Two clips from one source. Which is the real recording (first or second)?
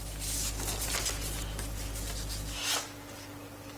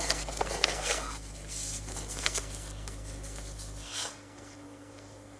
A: first